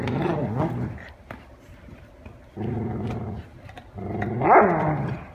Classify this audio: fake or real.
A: fake